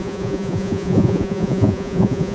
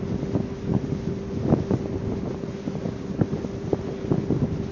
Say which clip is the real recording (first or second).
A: second